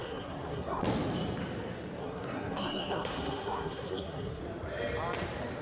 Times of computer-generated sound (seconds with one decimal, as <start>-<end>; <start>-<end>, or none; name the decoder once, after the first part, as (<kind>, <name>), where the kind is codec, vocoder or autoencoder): 0.0-0.8 (codec, SNAC); 2.0-4.4